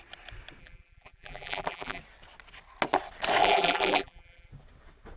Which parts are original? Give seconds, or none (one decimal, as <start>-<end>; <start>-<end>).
0.0-0.6; 2.0-3.4; 4.5-5.2